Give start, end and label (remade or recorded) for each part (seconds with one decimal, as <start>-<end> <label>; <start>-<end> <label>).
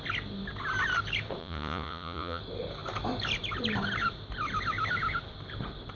0.0-1.4 recorded; 1.4-2.4 remade; 2.4-6.0 recorded